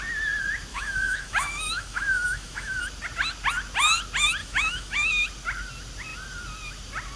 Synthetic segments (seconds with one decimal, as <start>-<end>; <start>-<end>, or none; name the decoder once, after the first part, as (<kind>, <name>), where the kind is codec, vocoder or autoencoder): 0.7-2.8 (autoencoder, DAC-VAE); 4.4-5.1